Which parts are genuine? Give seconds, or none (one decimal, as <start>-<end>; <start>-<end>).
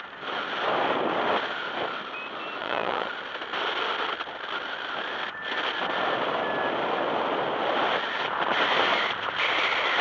0.0-2.6; 3.1-10.0